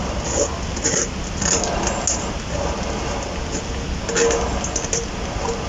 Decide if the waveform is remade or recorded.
recorded